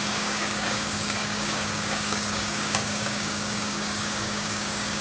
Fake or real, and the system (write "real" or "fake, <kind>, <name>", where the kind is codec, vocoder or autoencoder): fake, codec, DAC